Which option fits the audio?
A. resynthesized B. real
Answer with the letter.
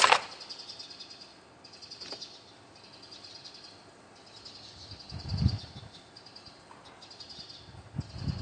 B